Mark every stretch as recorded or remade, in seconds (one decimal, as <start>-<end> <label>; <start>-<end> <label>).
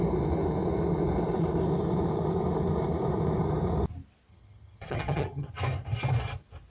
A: 0.0-4.3 recorded; 4.3-5.5 remade; 5.5-6.7 recorded